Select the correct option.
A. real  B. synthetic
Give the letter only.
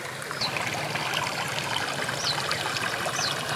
A